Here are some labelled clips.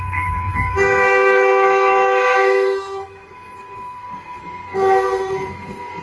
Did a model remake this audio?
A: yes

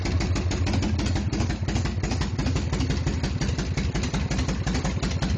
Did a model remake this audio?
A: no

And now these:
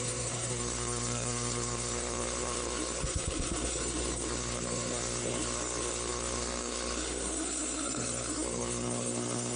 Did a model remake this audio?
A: yes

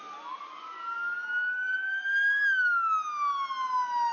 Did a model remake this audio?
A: no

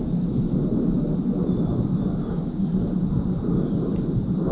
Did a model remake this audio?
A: no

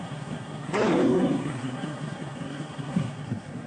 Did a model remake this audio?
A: yes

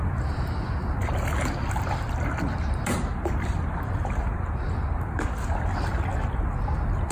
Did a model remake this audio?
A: no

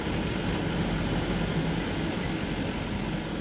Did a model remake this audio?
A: no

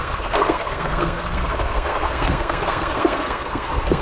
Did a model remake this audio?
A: yes